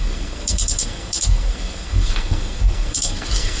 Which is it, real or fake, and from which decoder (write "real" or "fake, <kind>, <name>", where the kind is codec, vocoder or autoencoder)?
fake, codec, SNAC